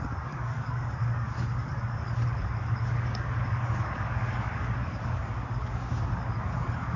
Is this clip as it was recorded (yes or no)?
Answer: no